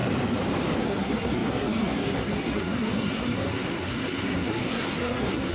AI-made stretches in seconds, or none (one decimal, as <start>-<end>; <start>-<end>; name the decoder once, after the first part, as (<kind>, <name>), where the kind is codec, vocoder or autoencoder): 0.8-5.5 (codec, SNAC)